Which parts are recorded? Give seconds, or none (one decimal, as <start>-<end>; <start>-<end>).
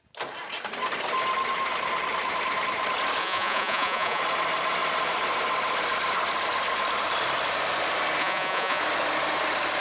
0.0-3.2; 4.2-8.2; 8.8-9.8